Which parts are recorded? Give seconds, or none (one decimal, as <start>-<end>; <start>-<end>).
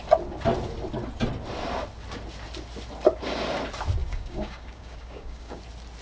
0.0-4.0; 5.6-6.0